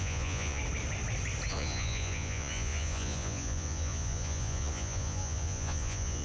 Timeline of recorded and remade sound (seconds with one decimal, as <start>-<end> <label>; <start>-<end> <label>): 0.0-0.6 remade; 0.6-1.5 recorded; 1.5-6.2 remade